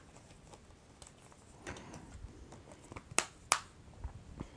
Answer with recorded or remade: recorded